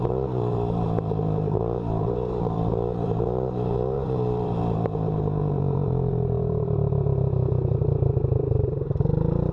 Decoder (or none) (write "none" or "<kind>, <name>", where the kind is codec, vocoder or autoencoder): vocoder, BigVGAN v2